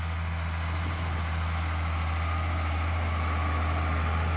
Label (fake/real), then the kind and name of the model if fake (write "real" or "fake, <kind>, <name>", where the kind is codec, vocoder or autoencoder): real